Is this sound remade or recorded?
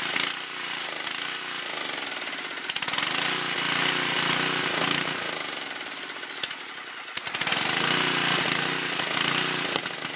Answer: recorded